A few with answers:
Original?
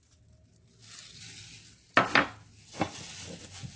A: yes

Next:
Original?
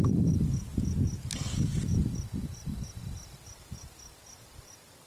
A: yes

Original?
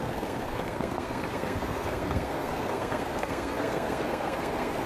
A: no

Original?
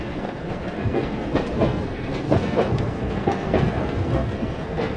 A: no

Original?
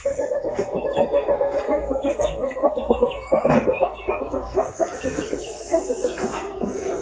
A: no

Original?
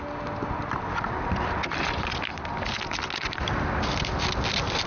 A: yes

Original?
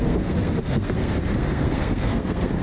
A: no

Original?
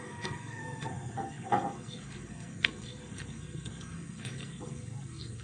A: no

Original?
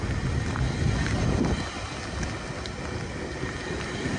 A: yes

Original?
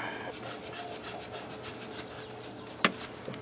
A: yes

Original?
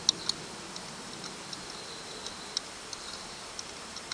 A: yes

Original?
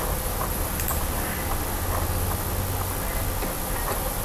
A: yes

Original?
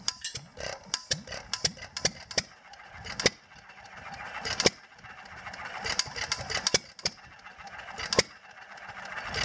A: yes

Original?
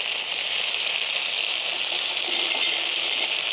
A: yes